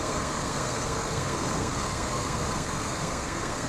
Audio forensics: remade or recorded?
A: remade